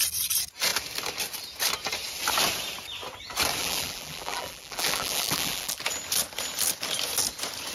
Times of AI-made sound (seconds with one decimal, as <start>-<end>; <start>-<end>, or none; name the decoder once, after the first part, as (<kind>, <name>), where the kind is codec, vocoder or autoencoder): 3.6-5.8 (vocoder, BigVGAN v2)